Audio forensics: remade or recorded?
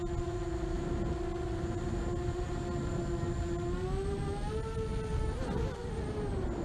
recorded